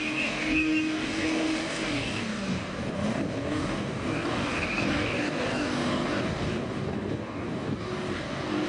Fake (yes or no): yes